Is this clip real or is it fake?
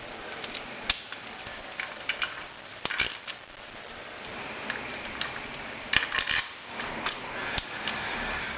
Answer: fake